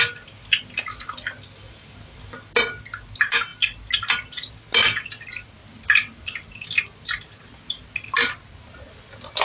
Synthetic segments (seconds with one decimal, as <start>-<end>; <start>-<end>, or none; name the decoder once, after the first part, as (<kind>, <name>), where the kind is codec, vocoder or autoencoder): none